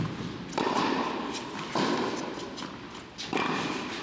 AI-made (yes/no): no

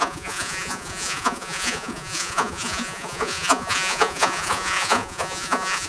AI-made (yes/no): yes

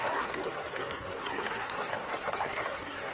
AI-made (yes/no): yes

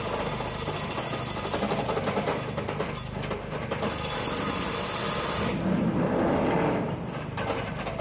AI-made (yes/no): no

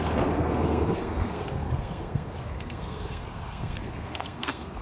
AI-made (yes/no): yes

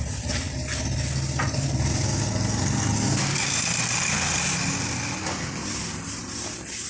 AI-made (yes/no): no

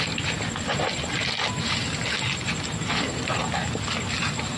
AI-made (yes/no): no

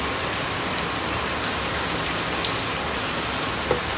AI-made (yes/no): no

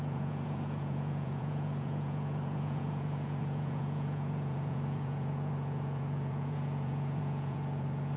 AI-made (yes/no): yes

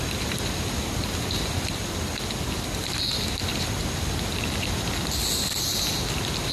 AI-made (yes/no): no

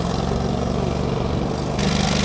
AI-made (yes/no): no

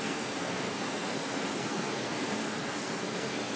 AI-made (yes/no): yes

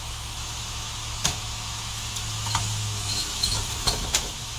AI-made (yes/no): yes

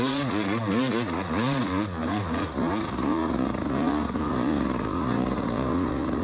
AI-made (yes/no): yes